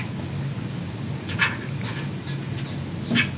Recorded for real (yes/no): yes